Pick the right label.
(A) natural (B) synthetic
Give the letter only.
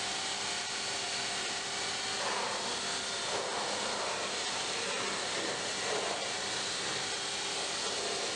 A